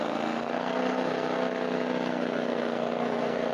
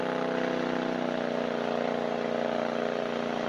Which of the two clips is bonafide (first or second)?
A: second